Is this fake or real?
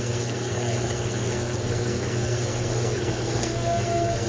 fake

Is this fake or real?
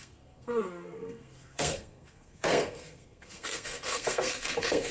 fake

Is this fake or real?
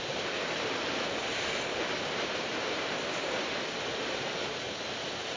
fake